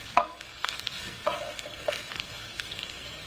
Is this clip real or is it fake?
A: fake